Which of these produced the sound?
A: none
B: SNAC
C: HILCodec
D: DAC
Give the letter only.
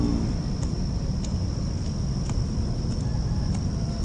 A